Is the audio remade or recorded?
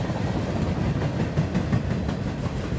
recorded